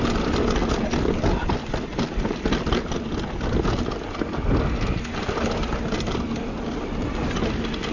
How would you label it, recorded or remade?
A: recorded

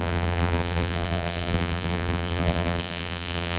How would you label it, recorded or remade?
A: remade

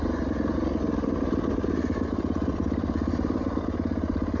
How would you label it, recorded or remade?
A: recorded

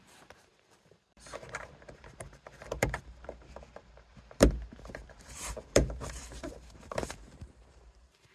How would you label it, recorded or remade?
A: remade